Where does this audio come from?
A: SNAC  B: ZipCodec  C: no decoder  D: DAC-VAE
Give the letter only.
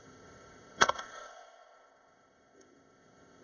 B